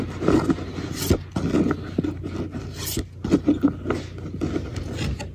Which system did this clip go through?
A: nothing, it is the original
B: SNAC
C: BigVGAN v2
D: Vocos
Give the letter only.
A